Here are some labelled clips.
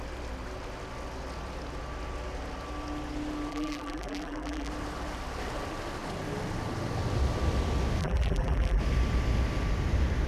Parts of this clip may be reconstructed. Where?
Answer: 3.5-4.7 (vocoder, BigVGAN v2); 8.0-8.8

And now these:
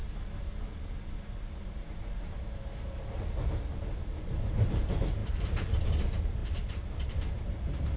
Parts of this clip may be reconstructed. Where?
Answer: 4.2-8.0 (vocoder, BigVGAN v2)